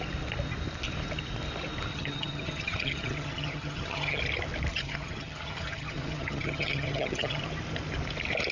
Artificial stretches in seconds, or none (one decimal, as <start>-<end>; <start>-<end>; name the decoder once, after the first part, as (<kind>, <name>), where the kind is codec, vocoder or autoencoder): 1.9-4.2 (vocoder, HiFi-GAN); 4.7-7.4